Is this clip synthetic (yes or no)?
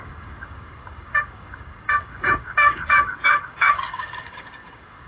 yes